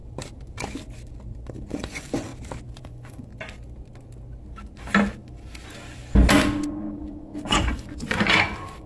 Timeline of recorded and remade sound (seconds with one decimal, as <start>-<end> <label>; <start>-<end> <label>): 0.0-1.5 recorded; 1.5-2.3 remade; 2.3-2.8 recorded; 2.8-3.3 remade; 3.3-6.7 recorded; 6.7-8.9 remade